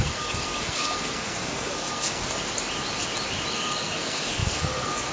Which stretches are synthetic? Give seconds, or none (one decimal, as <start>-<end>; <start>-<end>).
0.0-2.2; 3.5-5.1